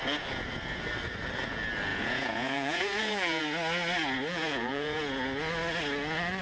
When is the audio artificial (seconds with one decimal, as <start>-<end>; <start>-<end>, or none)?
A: 1.9-3.4; 4.3-5.0